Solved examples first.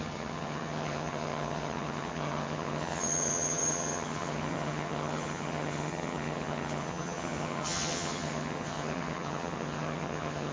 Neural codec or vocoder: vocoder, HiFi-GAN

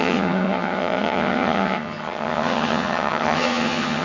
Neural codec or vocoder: vocoder, HiFi-GAN